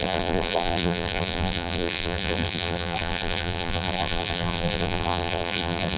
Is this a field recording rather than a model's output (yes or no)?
no